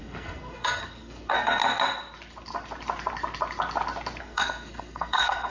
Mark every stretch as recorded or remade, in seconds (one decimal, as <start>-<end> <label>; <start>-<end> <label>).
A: 0.0-1.6 remade; 1.6-4.2 recorded; 4.2-5.5 remade